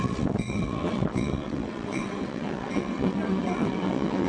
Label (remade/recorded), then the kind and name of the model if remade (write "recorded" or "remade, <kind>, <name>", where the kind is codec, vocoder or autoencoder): remade, vocoder, WaveNeXt